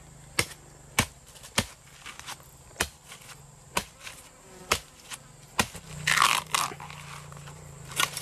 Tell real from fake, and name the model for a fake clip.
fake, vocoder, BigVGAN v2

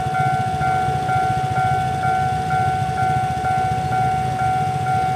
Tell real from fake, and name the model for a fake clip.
real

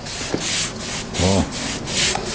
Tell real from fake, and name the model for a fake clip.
real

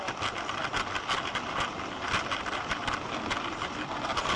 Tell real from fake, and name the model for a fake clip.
real